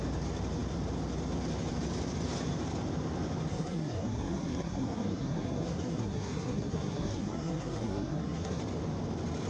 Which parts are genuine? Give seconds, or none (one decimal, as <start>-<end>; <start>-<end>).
0.0-3.5; 8.6-9.5